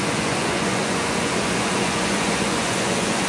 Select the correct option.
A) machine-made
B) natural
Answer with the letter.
A